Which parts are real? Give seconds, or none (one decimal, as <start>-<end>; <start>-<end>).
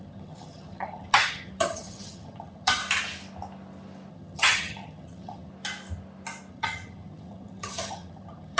2.8-4.1; 5.5-6.5